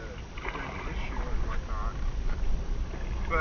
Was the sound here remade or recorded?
recorded